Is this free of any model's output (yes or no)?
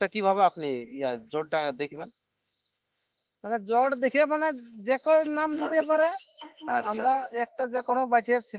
no